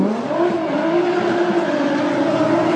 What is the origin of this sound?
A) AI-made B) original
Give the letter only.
B